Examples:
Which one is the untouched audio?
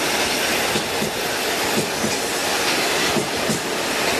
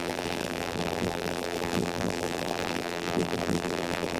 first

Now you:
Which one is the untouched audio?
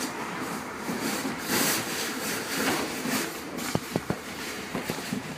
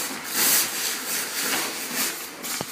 second